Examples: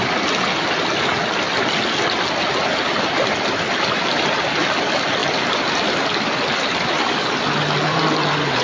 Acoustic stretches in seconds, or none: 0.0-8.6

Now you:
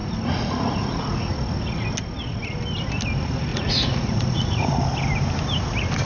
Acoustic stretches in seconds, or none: 1.3-3.5; 4.7-6.1

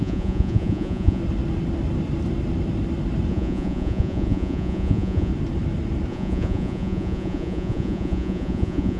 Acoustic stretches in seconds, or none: 1.2-3.3; 5.3-6.1

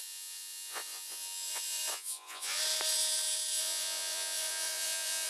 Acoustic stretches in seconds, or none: 2.6-3.6

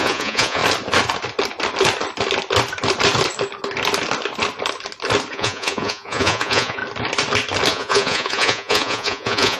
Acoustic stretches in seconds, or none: 0.6-5.3; 6.8-7.7

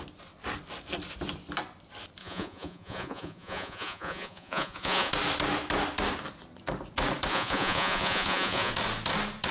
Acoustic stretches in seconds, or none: 0.0-2.2; 5.1-7.3; 8.7-9.5

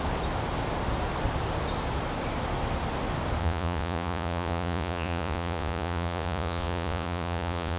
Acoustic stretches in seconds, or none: 0.0-3.4